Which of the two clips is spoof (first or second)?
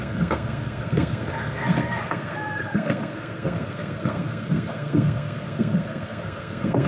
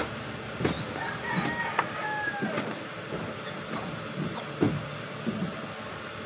first